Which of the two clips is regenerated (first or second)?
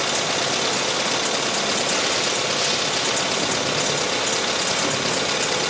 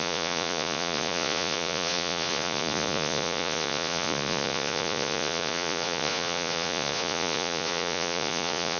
second